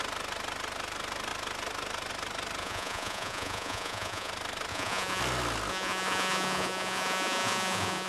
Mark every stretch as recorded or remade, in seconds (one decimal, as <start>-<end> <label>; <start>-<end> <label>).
0.0-2.6 recorded; 2.6-4.3 remade; 4.3-4.7 recorded; 4.7-5.2 remade; 5.2-5.7 recorded; 5.7-8.1 remade